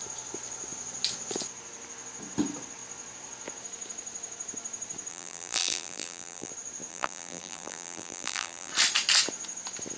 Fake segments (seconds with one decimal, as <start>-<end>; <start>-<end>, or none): 5.1-6.5; 6.9-8.7